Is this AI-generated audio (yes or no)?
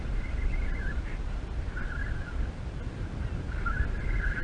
no